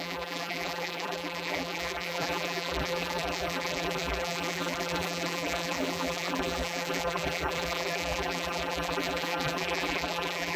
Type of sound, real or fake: fake